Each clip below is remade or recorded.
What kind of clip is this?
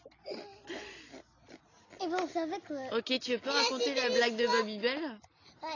recorded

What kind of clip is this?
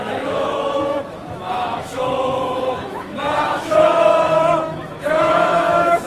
remade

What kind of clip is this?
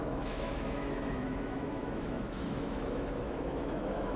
remade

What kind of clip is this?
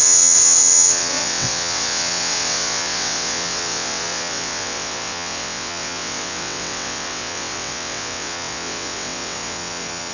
remade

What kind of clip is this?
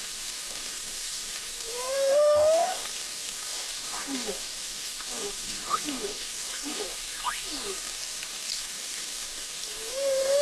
remade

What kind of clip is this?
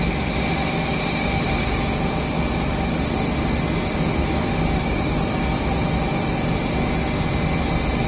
recorded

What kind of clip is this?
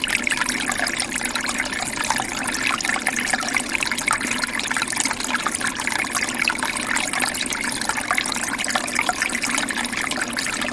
recorded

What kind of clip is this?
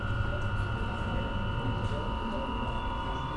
recorded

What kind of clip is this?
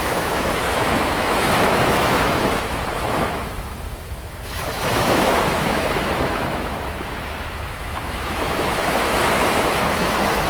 remade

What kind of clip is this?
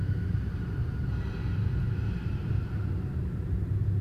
remade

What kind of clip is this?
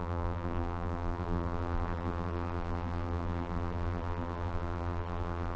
remade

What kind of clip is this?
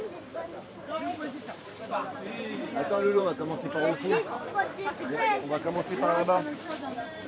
remade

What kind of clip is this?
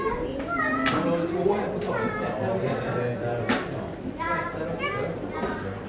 recorded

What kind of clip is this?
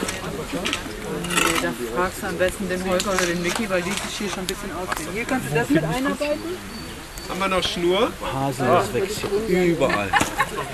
recorded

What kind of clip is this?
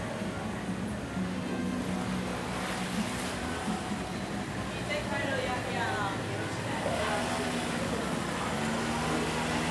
recorded